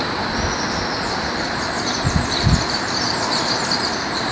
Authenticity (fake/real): real